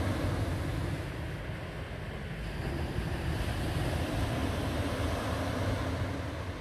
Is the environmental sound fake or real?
real